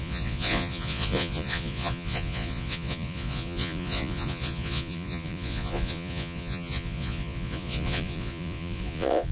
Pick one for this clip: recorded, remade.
remade